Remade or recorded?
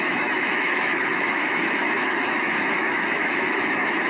remade